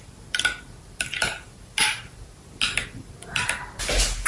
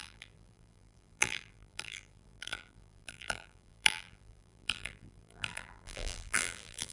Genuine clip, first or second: first